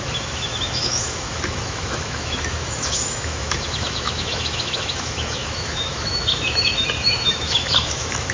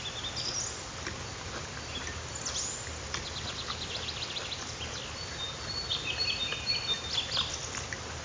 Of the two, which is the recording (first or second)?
second